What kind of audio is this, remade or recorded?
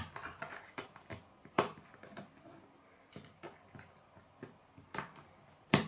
recorded